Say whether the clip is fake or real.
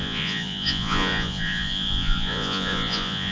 fake